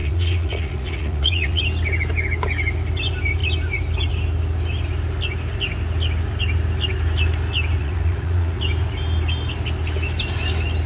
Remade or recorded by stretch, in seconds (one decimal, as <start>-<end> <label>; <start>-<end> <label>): 0.0-1.6 remade; 1.6-7.8 recorded; 7.8-8.6 remade; 8.6-10.9 recorded